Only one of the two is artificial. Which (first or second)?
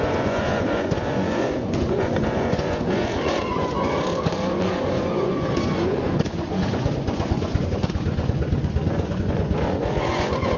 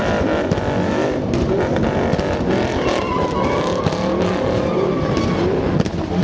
first